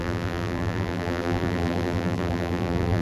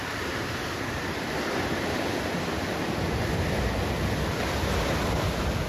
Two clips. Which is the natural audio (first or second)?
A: second